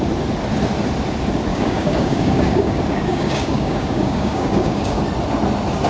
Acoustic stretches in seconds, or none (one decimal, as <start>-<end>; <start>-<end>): 0.0-1.5; 5.0-5.9